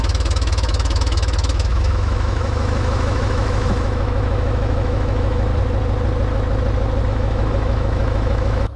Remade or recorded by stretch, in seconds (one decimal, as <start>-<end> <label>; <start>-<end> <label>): 0.0-5.5 remade; 5.5-7.1 recorded; 7.1-8.8 remade

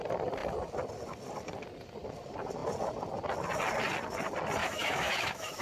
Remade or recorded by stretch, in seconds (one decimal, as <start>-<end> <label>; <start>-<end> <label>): 0.0-4.6 recorded; 4.6-5.6 remade

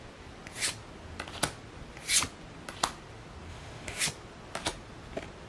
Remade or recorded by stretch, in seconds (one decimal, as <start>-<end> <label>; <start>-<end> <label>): 0.0-3.5 recorded; 3.5-4.0 remade; 4.0-5.5 recorded

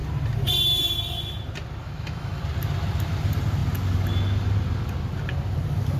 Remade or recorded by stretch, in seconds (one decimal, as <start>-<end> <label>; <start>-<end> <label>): 0.0-1.8 recorded; 1.8-2.4 remade; 2.4-6.0 recorded